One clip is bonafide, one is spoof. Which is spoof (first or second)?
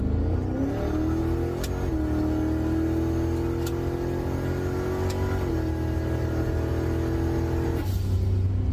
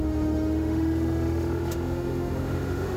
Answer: second